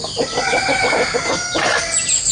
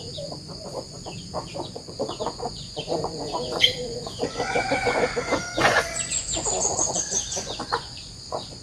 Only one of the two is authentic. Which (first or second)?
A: first